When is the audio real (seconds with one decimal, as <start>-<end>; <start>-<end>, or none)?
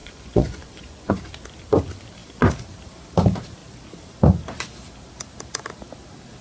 1.1-6.4